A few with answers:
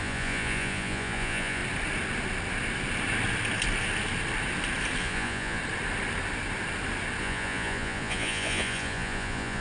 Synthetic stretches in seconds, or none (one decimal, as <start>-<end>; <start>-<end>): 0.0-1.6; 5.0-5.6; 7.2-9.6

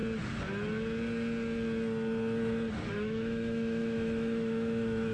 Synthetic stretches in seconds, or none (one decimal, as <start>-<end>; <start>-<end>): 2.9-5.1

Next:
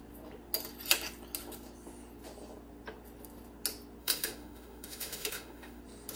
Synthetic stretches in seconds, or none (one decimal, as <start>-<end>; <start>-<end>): 4.0-5.8

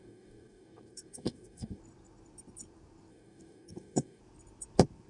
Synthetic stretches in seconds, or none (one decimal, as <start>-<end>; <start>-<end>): 0.0-1.8; 3.1-4.2